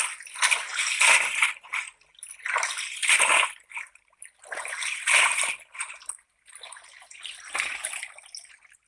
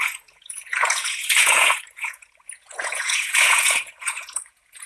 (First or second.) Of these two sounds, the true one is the first